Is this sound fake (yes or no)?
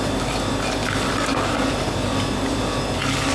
no